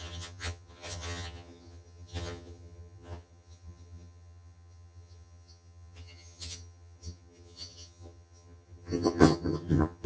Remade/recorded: remade